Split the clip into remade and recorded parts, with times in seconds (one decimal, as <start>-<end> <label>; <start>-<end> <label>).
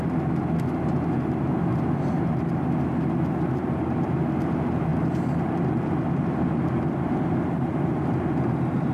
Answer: 0.0-1.7 recorded; 1.7-2.6 remade; 2.6-4.9 recorded; 4.9-8.5 remade; 8.5-8.9 recorded